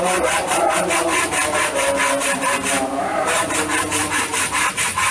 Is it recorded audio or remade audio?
remade